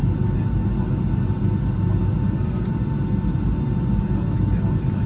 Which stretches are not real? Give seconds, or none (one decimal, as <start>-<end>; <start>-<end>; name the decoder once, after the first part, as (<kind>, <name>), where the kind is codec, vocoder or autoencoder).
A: none